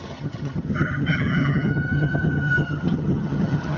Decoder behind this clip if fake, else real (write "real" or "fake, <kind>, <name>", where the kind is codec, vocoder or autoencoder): fake, vocoder, HiFi-GAN